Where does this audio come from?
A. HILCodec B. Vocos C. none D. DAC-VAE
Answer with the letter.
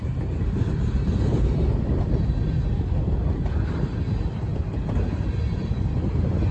C